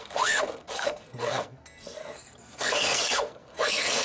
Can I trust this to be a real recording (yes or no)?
no